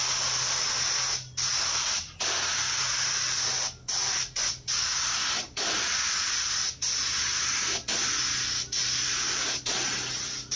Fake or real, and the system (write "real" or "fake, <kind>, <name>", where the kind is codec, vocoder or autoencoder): real